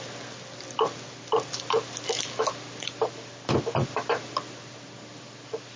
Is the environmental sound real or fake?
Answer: real